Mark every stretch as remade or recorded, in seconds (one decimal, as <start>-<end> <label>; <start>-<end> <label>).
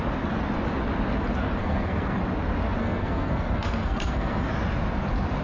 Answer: 0.0-1.6 recorded; 1.6-2.2 remade; 2.2-2.8 recorded; 2.8-4.5 remade; 4.5-5.4 recorded